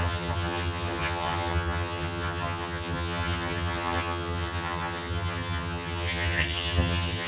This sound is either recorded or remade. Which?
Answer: remade